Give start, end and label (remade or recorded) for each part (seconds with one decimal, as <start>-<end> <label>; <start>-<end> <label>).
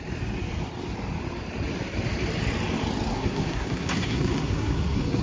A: 0.0-3.1 recorded; 3.1-5.2 remade